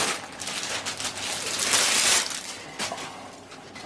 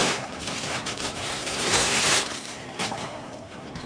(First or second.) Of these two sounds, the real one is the first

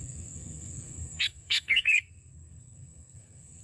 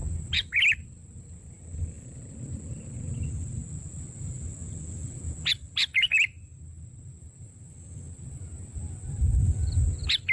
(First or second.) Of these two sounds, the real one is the second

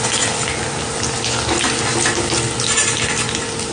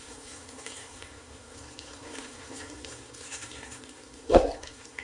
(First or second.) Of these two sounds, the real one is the first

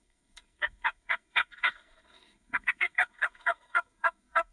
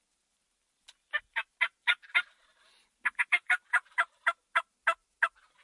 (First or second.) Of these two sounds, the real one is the second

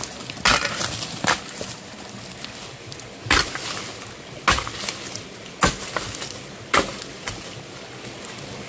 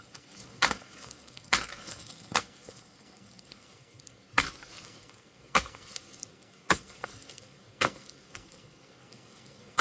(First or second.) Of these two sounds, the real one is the first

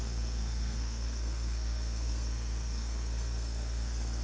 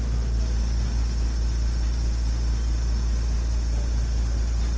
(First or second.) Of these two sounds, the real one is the second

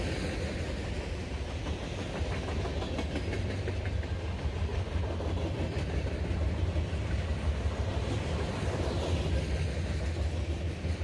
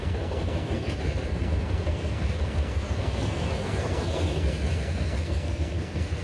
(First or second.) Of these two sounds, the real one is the first